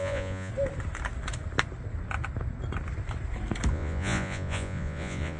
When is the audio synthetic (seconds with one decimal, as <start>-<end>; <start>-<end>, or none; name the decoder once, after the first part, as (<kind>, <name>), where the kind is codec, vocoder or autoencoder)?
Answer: 0.0-0.5 (vocoder, Vocos); 3.7-5.4